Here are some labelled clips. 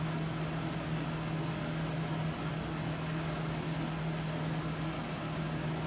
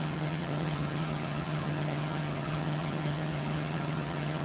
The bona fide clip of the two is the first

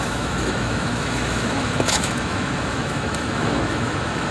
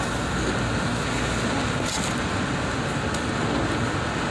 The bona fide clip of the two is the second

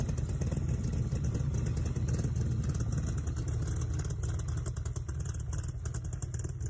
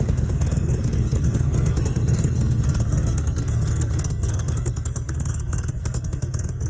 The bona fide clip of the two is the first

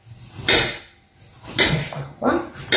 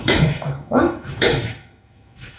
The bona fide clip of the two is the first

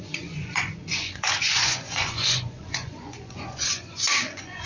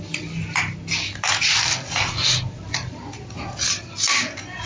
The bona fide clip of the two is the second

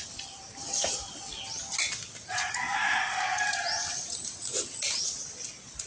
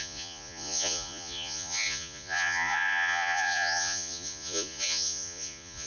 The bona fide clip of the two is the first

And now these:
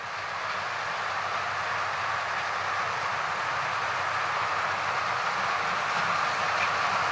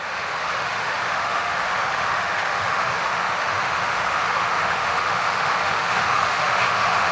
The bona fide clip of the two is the first